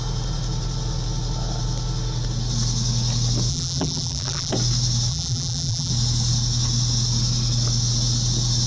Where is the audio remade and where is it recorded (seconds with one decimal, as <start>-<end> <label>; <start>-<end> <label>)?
0.0-3.5 recorded; 3.5-4.5 remade; 4.5-5.1 recorded; 5.1-5.9 remade; 5.9-8.7 recorded